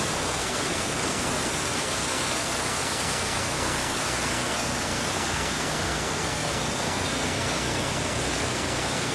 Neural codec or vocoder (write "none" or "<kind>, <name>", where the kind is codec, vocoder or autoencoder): codec, SNAC